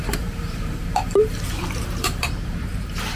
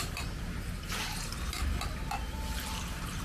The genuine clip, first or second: second